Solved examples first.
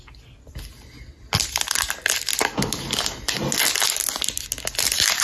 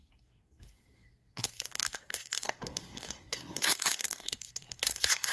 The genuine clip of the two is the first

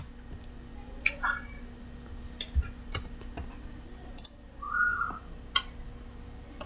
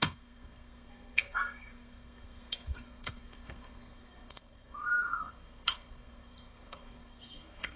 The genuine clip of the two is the first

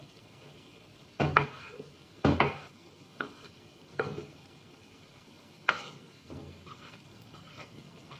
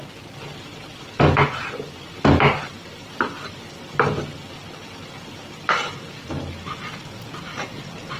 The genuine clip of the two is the second